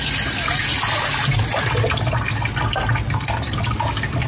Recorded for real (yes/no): yes